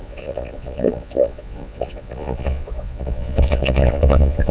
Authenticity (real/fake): fake